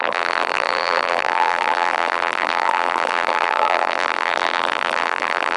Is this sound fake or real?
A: fake